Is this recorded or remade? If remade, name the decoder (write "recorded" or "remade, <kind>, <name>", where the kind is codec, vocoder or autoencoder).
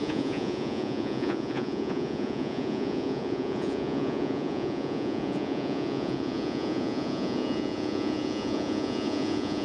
remade, vocoder, Vocos